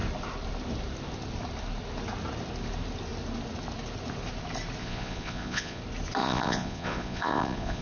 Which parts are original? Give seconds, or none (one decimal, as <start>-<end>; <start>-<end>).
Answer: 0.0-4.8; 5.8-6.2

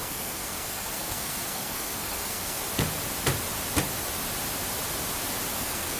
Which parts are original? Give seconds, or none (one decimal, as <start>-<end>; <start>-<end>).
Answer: 2.6-5.5

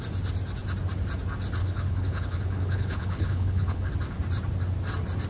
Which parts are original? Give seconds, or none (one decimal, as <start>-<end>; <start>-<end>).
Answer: 0.0-1.6; 3.9-5.3

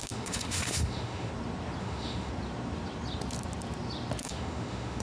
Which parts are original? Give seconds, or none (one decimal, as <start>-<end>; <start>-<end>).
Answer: 1.3-1.8; 2.3-4.2

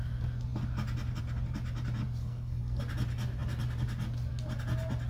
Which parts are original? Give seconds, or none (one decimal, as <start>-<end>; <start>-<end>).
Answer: 0.0-2.2; 2.8-5.1

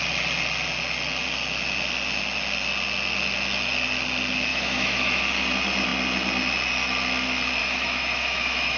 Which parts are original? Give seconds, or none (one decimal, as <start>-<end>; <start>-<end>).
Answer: 0.0-4.5; 5.2-7.6